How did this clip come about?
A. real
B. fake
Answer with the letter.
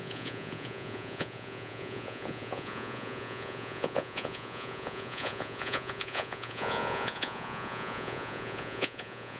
B